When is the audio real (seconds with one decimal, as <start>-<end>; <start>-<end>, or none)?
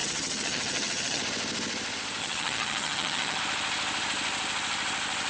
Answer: 1.2-2.2; 3.4-5.3